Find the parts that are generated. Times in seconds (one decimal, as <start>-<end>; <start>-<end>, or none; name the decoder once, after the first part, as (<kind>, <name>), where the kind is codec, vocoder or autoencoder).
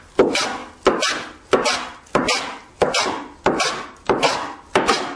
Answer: none